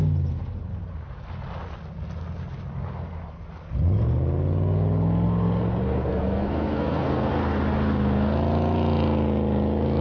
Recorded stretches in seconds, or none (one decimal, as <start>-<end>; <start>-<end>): 0.0-6.1; 7.3-10.0